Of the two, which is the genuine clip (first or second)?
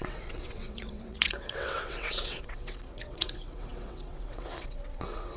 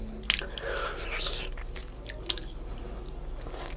second